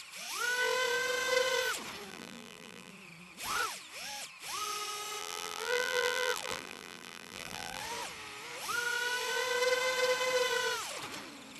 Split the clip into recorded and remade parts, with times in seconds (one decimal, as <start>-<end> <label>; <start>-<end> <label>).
0.0-2.1 recorded; 2.1-2.9 remade; 2.9-5.2 recorded; 5.2-7.8 remade; 7.8-11.6 recorded